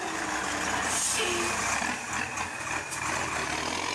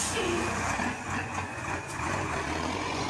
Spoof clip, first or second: second